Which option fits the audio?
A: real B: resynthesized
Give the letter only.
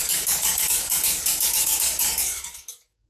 B